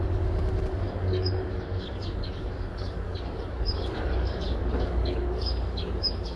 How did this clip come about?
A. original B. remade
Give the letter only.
B